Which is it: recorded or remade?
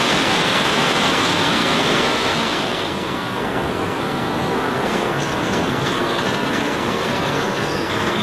remade